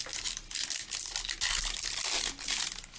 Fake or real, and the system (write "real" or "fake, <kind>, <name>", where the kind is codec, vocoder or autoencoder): real